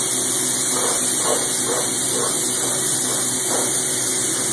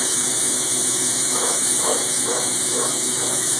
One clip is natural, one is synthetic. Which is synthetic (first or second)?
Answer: second